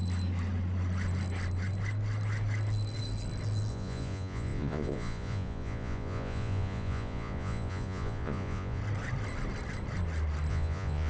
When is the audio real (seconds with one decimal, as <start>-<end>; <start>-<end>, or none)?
0.0-3.7; 8.8-10.5